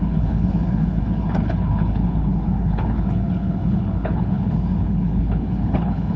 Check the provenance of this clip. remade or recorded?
remade